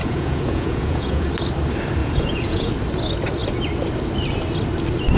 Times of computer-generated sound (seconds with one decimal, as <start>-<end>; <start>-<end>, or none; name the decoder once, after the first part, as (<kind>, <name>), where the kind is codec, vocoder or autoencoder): 0.0-1.3 (vocoder, Vocos); 2.0-2.7